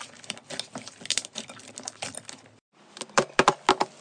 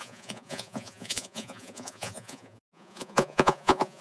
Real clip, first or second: first